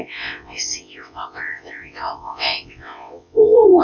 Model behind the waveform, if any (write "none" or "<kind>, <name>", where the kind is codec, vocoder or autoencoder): vocoder, WaveNeXt